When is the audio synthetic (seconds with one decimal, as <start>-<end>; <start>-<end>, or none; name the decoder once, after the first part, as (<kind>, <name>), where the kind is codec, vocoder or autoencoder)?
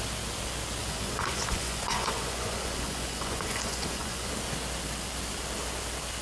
0.8-4.3 (vocoder, Vocos)